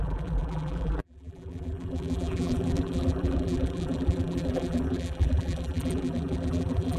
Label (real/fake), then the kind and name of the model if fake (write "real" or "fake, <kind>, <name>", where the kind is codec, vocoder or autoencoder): fake, vocoder, BigVGAN v2